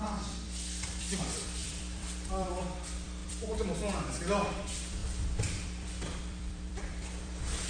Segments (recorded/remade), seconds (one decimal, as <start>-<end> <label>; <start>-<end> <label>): 0.0-7.7 remade